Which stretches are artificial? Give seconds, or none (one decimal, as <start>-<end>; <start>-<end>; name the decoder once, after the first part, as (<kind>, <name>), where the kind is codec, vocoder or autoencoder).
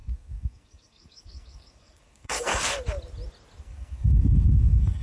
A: 0.0-2.7 (codec, SNAC); 3.6-5.0